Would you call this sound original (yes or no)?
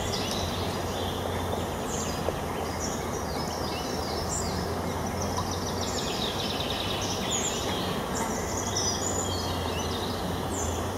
yes